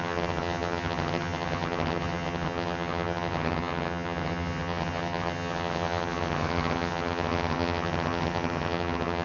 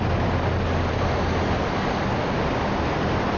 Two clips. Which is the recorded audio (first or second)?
second